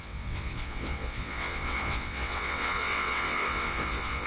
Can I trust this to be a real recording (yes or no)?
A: no